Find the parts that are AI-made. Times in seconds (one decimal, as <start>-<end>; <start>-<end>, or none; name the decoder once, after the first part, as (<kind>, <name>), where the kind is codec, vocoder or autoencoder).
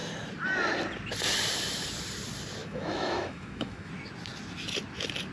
2.6-3.9 (autoencoder, DAC-VAE)